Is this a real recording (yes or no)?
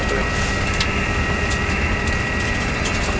yes